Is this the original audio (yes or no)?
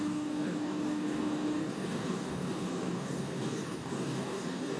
no